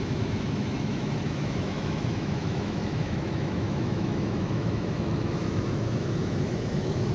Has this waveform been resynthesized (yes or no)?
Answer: yes